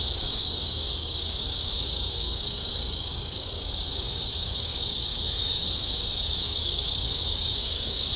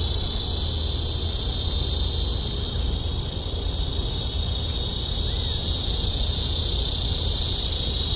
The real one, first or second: second